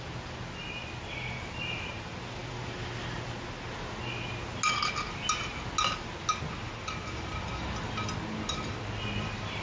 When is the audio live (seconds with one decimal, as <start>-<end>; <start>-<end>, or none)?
0.0-2.4; 3.0-6.6; 7.9-9.6